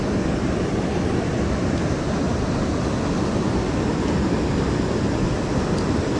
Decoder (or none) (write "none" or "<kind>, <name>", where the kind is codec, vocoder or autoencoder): none